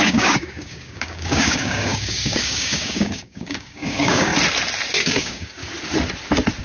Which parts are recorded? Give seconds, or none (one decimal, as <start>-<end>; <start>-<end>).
4.3-5.0; 5.6-6.6